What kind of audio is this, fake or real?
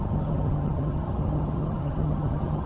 fake